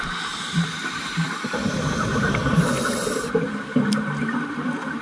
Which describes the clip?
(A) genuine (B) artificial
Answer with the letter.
B